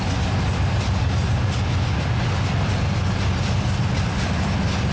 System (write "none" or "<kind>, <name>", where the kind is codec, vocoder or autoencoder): none